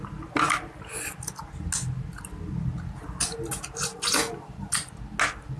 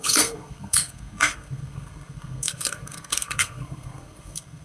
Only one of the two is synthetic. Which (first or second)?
second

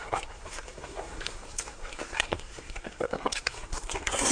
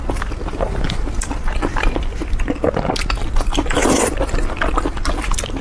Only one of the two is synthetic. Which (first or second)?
first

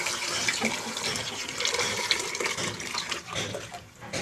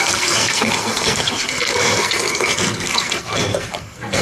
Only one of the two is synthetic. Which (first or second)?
second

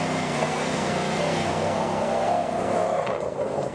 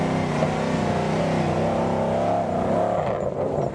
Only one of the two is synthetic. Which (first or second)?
first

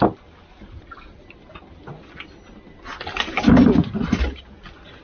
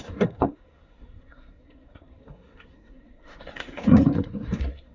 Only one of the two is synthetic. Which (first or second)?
second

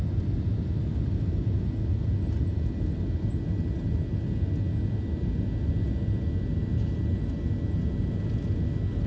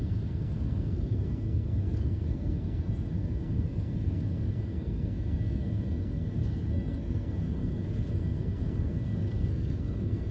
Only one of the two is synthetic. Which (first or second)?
second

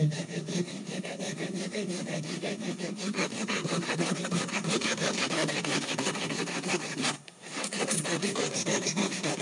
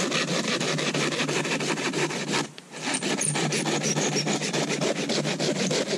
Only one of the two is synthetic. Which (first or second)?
first